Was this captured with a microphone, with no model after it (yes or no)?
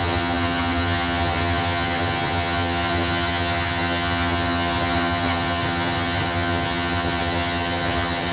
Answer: no